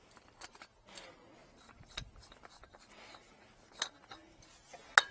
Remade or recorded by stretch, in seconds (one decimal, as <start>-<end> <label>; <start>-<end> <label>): 0.0-5.1 recorded